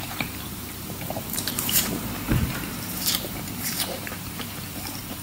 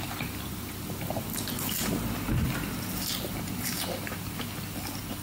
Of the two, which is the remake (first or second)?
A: first